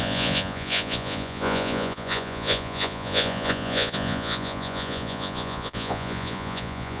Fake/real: fake